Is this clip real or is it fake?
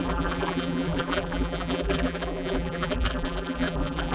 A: fake